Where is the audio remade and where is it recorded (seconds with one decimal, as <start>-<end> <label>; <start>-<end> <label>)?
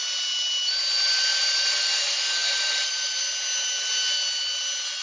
0.0-1.3 recorded; 1.3-2.0 remade; 2.0-2.4 recorded; 2.4-3.2 remade; 3.2-5.0 recorded